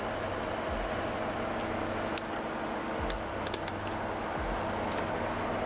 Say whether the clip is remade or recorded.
recorded